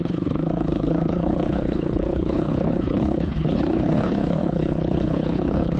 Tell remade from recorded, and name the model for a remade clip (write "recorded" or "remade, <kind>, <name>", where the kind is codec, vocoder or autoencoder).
remade, codec, HILCodec